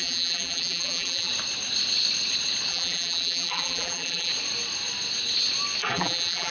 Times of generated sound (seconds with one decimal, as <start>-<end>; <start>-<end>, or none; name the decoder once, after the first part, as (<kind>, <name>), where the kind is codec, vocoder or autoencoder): 0.0-1.3 (vocoder, BigVGAN v2); 2.7-4.3; 5.8-6.5